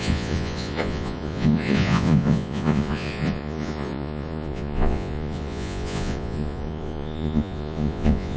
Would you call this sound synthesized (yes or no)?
yes